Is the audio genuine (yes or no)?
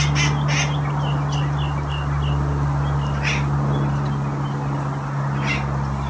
yes